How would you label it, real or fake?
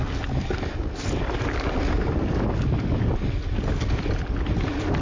real